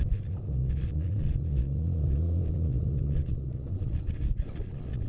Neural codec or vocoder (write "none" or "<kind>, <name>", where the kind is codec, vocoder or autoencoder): vocoder, Vocos